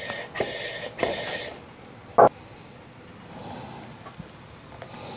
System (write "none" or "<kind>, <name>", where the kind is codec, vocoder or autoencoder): none